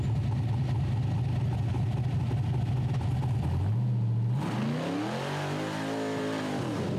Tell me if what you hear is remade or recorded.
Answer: recorded